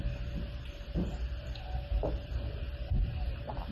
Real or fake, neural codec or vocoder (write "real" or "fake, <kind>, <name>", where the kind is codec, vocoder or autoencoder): fake, vocoder, BigVGAN v2